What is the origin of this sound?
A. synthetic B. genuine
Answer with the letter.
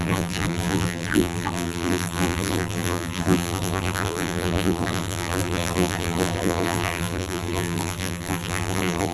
A